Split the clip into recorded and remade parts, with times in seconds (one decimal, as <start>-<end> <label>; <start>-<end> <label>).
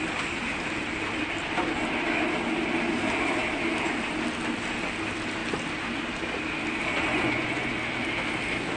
0.0-7.1 recorded; 7.1-7.7 remade; 7.7-8.8 recorded